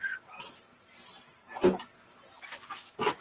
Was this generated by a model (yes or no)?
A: no